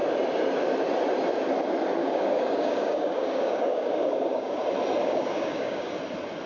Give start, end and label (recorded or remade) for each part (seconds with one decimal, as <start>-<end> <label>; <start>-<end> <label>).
0.0-2.0 recorded; 2.0-4.6 remade; 4.6-5.0 recorded; 5.0-5.9 remade; 5.9-6.5 recorded